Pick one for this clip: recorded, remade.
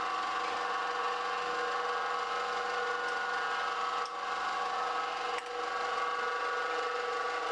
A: recorded